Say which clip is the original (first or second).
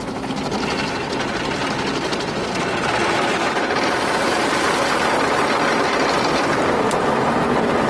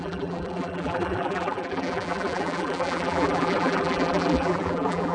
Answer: first